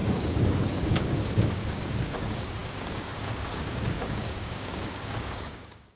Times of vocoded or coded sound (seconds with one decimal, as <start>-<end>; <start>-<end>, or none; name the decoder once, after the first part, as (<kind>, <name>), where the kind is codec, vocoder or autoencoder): 0.0-6.0 (codec, DAC)